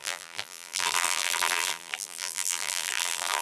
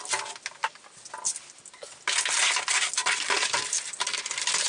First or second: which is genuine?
second